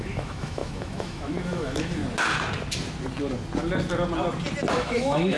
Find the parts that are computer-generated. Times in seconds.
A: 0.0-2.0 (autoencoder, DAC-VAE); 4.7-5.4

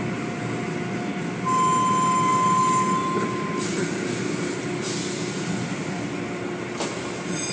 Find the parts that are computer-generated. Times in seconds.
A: none

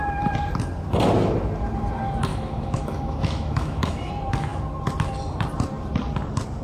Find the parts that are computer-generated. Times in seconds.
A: 2.3-4.1 (autoencoder, DAC-VAE)